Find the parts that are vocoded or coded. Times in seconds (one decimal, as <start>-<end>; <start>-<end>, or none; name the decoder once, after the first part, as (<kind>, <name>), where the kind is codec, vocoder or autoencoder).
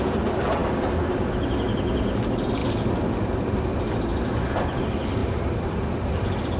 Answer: 0.6-1.3 (vocoder, BigVGAN v2); 2.6-4.8; 5.2-6.6